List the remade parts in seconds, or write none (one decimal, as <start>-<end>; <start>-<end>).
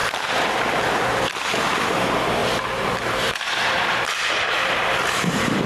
0.0-0.5; 2.4-4.9